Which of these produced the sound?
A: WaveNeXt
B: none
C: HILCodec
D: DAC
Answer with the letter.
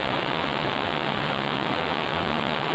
A